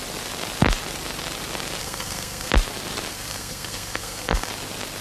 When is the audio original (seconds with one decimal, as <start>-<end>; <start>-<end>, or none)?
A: 0.0-1.8; 2.5-3.1; 4.5-5.0

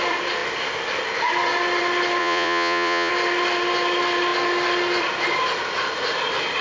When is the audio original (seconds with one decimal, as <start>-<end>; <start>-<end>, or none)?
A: 0.0-2.2; 3.1-6.6

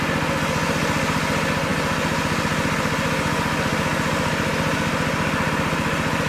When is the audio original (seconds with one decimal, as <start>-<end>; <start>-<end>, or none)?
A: 0.0-6.3

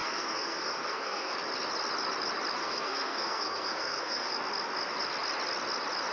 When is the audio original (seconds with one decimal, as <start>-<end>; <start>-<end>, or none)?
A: 1.3-2.6; 4.3-6.1